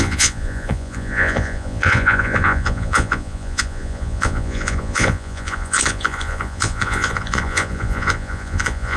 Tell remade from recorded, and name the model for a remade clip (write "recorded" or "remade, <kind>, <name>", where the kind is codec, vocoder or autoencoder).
remade, vocoder, Vocos